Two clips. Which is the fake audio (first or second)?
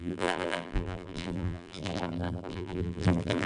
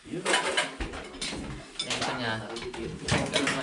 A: first